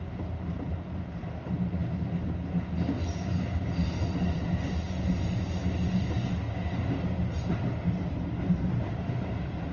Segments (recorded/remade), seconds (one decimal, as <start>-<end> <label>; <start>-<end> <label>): 0.0-9.7 recorded